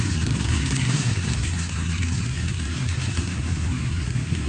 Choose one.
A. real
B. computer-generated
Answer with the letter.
B